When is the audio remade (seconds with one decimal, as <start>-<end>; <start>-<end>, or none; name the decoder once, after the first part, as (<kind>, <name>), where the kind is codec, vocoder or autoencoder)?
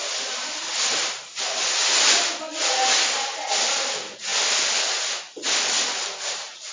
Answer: none